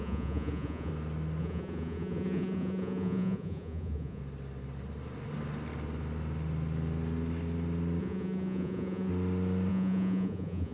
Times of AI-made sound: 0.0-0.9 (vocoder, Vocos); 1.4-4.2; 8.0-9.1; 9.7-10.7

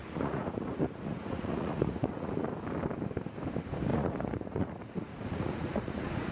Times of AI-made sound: 0.0-2.5 (vocoder, Vocos); 3.9-6.3

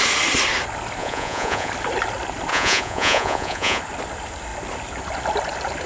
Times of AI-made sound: 1.0-1.7 (vocoder, Vocos); 2.5-3.8